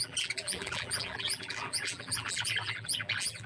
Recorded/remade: remade